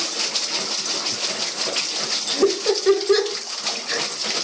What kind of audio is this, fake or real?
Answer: real